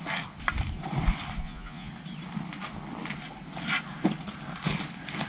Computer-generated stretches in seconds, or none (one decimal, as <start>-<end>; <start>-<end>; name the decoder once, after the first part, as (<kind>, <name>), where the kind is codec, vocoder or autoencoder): 1.4-1.9 (vocoder, Vocos)